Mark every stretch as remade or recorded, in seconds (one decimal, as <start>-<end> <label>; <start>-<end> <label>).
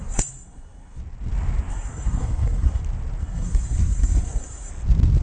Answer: 0.0-1.0 remade; 1.0-1.7 recorded; 1.7-2.8 remade; 2.8-3.2 recorded; 3.2-4.7 remade; 4.7-5.2 recorded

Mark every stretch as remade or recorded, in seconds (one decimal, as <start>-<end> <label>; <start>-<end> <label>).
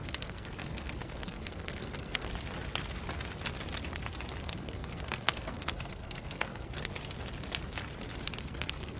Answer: 0.0-2.3 remade; 2.3-4.4 recorded; 4.4-6.9 remade; 6.9-8.4 recorded; 8.4-9.0 remade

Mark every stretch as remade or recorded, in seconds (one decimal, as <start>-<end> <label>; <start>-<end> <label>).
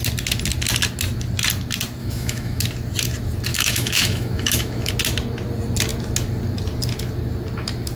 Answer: 0.0-2.0 recorded; 2.0-2.6 remade; 2.6-3.5 recorded; 3.5-4.9 remade; 4.9-8.0 recorded